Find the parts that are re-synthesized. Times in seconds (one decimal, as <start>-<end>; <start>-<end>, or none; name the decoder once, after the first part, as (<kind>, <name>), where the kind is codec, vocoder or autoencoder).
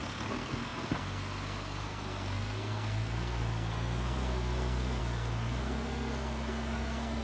0.0-7.2 (codec, SNAC)